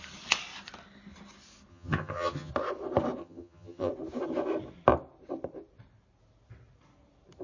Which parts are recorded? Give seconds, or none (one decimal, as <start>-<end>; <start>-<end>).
0.0-1.7; 2.5-3.2; 3.9-7.4